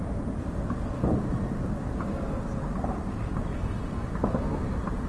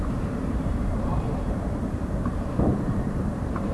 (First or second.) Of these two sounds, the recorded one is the first